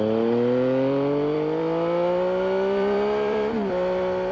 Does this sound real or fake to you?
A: fake